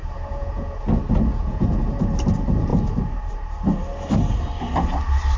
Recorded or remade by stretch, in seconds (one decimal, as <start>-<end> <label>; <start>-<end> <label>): 0.0-0.8 remade; 0.8-1.3 recorded; 1.3-2.0 remade; 2.0-5.4 recorded